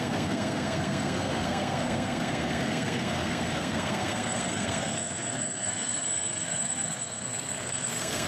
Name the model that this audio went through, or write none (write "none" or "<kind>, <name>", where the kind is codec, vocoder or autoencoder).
codec, SNAC